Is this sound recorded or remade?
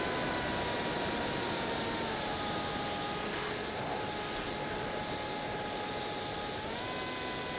recorded